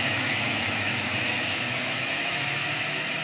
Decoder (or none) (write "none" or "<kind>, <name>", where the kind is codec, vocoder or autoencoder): autoencoder, DAC-VAE